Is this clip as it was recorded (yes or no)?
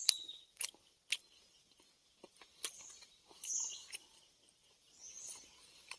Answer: yes